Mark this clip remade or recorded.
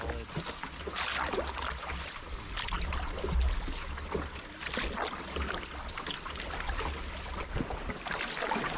recorded